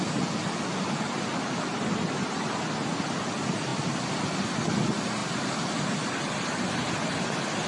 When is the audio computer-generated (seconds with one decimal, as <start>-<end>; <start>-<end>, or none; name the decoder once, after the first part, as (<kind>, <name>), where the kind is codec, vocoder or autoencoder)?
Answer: none